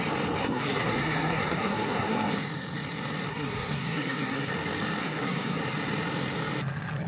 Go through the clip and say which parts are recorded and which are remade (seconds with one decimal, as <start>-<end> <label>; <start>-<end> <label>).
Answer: 0.0-0.4 recorded; 0.4-2.3 remade; 2.3-3.3 recorded; 3.3-4.5 remade; 4.5-5.0 recorded; 5.0-5.6 remade; 5.6-7.1 recorded